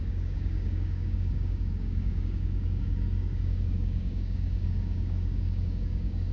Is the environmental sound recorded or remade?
remade